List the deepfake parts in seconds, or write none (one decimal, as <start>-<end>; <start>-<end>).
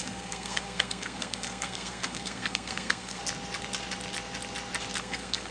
0.0-3.2; 5.0-5.5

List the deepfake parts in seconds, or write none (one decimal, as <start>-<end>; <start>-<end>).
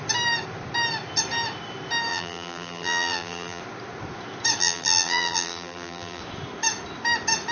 2.1-3.6; 4.6-6.2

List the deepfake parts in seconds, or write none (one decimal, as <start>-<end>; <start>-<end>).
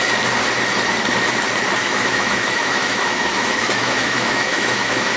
1.8-5.2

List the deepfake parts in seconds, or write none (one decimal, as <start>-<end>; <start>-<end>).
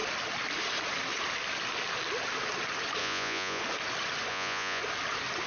3.0-3.6; 4.3-4.8